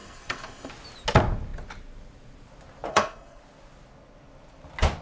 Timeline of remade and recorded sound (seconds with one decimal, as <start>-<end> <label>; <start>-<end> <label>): 0.0-0.7 remade; 0.7-2.9 recorded; 2.9-3.4 remade; 3.4-5.0 recorded